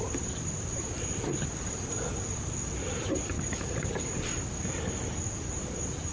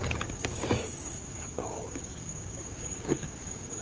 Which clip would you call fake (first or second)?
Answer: second